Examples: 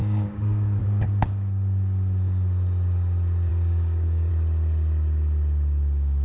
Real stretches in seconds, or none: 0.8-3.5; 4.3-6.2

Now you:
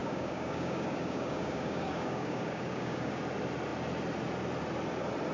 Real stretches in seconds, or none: 3.2-5.3

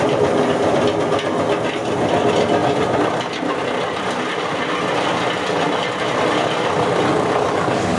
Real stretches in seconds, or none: 0.0-7.1

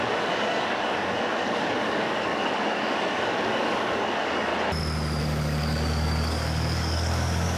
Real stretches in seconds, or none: 4.5-5.2